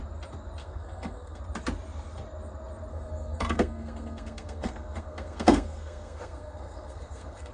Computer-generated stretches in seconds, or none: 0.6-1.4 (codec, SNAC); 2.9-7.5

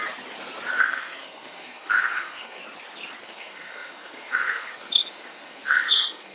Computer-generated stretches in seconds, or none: 0.8-2.6 (codec, SNAC); 3.2-6.3

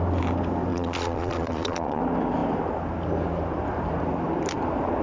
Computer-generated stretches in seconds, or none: 0.7-2.0 (vocoder, Vocos)

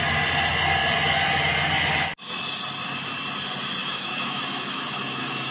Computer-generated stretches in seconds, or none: 3.8-5.5 (autoencoder, DAC-VAE)

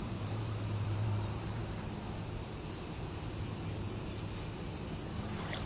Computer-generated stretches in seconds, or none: 0.0-1.6 (vocoder, BigVGAN v2); 5.0-5.7

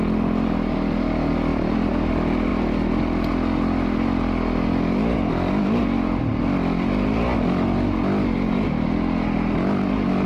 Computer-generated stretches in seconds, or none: none